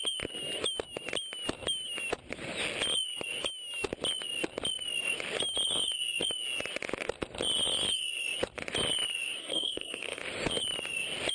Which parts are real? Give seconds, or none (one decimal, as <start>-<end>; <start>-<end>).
0.0-9.4; 10.2-11.3